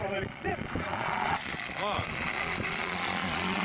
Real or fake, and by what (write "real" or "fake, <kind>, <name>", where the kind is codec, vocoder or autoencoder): fake, vocoder, Vocos